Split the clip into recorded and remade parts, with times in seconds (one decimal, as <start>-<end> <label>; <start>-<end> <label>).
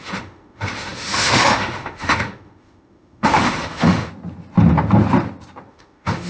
0.0-4.1 remade; 4.1-5.7 recorded; 5.7-6.3 remade